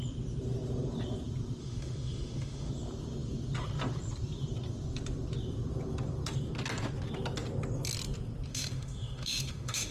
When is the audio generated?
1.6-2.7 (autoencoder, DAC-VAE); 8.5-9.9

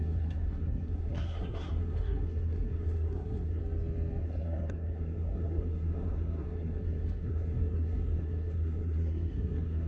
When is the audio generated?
0.0-3.6 (codec, SNAC); 4.2-9.9

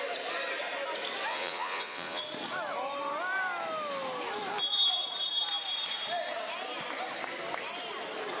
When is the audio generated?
1.3-2.2 (vocoder, Vocos)

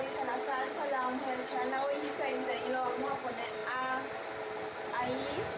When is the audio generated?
none

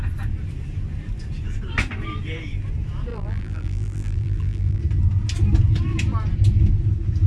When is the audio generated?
3.1-4.8 (vocoder, BigVGAN v2)

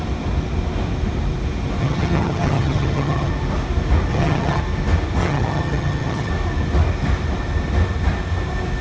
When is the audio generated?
1.8-3.3 (vocoder, HiFi-GAN); 4.1-4.6; 5.2-6.3

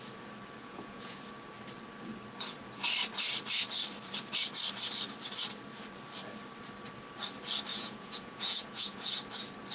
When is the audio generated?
0.6-1.2 (vocoder, Vocos); 7.7-9.1